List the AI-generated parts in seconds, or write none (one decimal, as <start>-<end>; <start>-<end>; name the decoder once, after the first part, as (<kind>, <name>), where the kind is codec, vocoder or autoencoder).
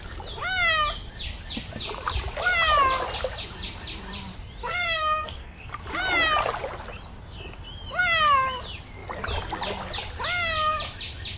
4.6-5.7 (codec, SNAC)